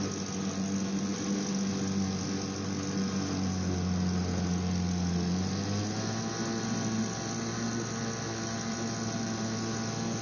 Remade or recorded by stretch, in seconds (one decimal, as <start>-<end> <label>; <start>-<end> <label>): 0.0-10.2 recorded